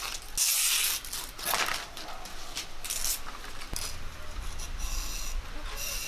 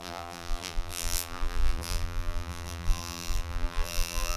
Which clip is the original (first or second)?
first